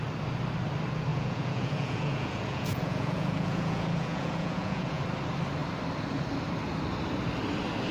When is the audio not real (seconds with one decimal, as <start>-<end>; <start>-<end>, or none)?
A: 1.1-5.0